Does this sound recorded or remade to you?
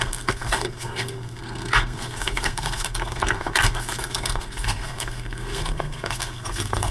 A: remade